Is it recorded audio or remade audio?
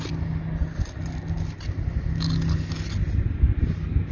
recorded